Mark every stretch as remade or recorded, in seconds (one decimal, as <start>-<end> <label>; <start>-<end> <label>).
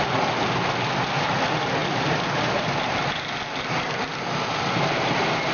0.0-5.5 recorded